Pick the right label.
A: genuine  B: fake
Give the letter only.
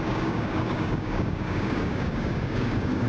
B